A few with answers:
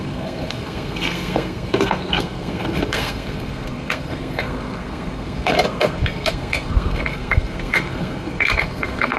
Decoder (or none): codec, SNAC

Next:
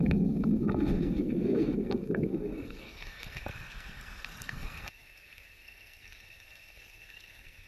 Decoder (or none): codec, SNAC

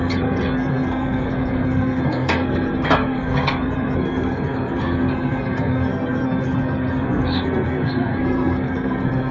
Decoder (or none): codec, SNAC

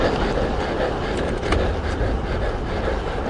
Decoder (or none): none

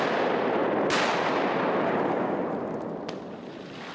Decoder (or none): none